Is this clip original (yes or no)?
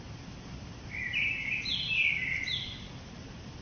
yes